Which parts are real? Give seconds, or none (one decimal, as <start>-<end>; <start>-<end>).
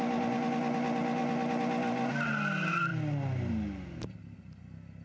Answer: 0.0-5.0